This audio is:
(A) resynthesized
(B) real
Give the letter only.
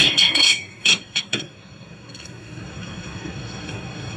A